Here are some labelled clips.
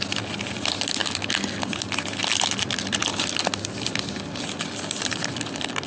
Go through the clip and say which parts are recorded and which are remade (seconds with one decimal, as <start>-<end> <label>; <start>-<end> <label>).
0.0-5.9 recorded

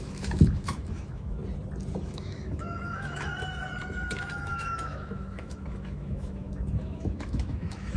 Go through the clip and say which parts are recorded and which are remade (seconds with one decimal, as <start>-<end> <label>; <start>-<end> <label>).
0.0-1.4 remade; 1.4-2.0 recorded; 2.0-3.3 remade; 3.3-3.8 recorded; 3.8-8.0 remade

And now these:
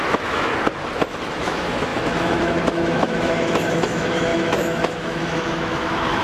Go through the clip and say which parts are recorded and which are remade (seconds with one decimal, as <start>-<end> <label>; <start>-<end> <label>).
0.0-0.5 remade; 0.5-1.4 recorded; 1.4-6.2 remade

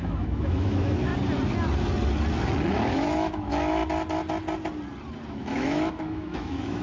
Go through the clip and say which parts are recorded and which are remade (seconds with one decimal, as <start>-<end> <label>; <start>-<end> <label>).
0.0-1.1 remade; 1.1-2.7 recorded; 2.7-3.8 remade; 3.8-5.3 recorded; 5.3-6.8 remade

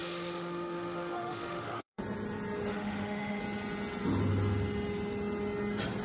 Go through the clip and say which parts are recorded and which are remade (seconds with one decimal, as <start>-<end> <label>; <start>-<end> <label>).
0.0-2.0 remade; 2.0-2.7 recorded; 2.7-3.4 remade; 3.4-6.0 recorded